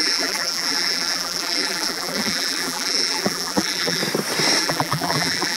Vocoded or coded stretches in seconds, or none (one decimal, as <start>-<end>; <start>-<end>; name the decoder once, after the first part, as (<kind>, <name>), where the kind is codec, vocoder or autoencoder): 0.0-4.0 (vocoder, BigVGAN v2); 4.6-5.6